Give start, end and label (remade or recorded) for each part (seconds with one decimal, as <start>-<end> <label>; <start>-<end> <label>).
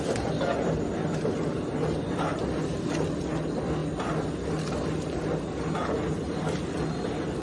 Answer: 0.0-7.4 recorded